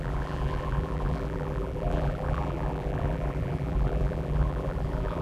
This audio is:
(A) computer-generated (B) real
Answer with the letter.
A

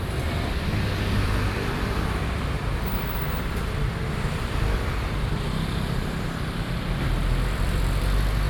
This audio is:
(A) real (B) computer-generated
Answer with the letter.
B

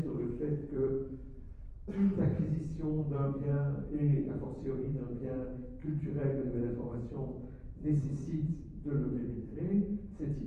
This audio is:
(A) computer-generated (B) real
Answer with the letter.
A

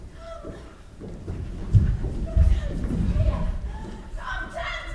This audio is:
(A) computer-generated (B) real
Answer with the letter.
A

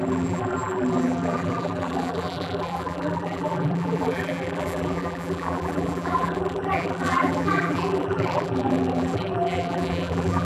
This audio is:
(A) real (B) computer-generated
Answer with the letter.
B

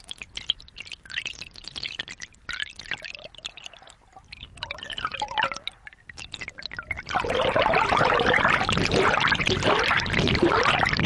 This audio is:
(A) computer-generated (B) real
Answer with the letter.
B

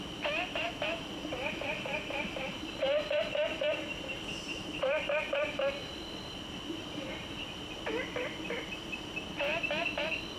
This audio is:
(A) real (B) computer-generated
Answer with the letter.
B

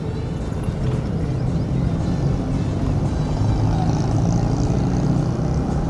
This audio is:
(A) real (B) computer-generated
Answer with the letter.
A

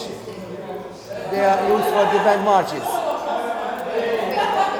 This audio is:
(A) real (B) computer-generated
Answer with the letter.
A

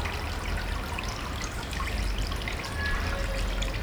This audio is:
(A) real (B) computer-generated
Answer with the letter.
A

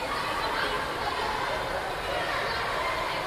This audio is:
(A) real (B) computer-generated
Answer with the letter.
A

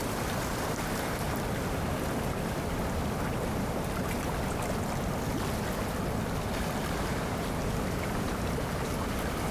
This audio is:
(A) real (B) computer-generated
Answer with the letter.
A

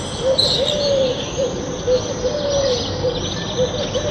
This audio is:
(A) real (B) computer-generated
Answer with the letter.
A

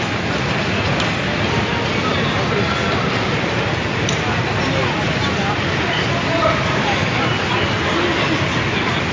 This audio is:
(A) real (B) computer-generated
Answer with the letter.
A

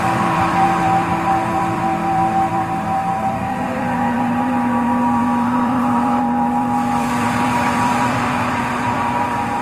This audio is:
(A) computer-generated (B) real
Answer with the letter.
A